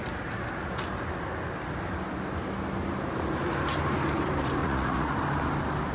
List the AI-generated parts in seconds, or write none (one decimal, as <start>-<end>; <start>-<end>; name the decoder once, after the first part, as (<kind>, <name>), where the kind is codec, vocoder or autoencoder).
4.6-5.1 (vocoder, Vocos)